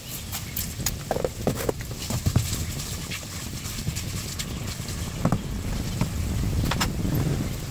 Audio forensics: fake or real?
real